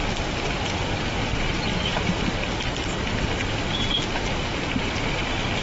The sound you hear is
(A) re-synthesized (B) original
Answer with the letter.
B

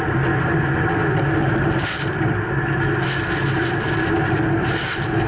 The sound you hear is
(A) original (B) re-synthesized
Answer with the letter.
A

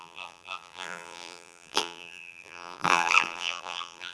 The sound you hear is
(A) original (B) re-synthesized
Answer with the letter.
B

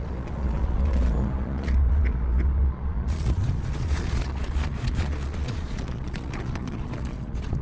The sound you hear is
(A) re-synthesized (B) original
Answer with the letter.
A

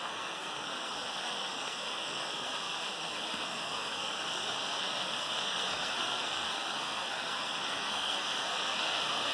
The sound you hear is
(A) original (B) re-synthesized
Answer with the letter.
B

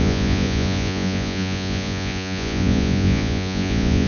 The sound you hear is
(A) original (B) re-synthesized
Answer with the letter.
B